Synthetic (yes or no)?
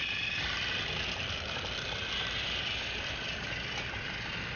no